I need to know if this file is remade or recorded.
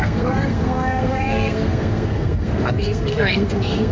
remade